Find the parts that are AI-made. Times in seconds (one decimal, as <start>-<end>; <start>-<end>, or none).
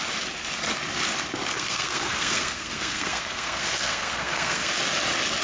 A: 1.5-4.7